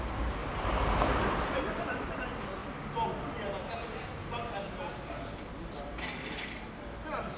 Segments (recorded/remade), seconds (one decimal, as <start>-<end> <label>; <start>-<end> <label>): 0.0-0.4 recorded; 0.4-1.3 remade; 1.3-7.4 recorded